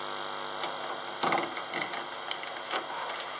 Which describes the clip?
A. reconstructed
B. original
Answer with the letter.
B